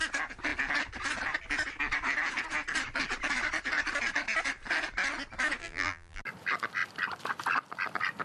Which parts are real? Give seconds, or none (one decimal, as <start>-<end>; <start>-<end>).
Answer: 0.0-5.6; 6.2-8.2